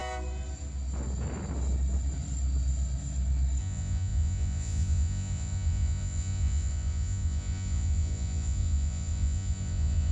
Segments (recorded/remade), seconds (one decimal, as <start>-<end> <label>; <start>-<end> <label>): 0.0-3.6 recorded; 3.6-10.1 remade

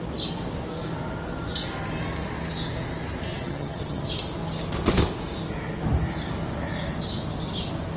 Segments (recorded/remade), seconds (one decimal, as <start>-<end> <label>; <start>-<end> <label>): 0.0-3.3 recorded; 3.3-4.1 remade; 4.1-8.0 recorded

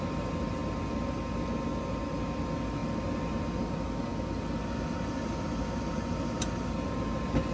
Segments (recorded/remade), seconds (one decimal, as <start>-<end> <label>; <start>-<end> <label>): 0.0-7.5 recorded

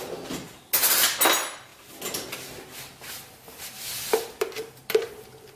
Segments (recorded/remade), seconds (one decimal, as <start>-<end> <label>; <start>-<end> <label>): 0.0-5.6 recorded

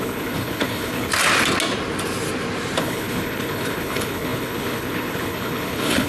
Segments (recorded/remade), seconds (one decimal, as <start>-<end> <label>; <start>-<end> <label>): 0.0-1.1 remade; 1.1-2.8 recorded; 2.8-6.1 remade

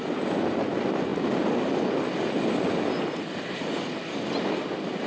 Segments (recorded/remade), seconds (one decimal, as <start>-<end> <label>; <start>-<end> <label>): 0.0-5.1 recorded

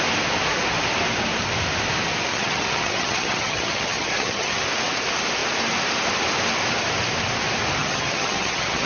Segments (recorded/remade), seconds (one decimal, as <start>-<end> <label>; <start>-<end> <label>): 0.0-2.3 recorded; 2.3-4.6 remade; 4.6-7.8 recorded; 7.8-8.9 remade